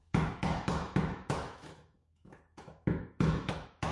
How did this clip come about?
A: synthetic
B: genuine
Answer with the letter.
A